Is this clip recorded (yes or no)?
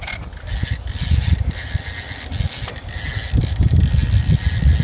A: yes